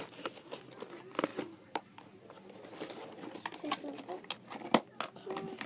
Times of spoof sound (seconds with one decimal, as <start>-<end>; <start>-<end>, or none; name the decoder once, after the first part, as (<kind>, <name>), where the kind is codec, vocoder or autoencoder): none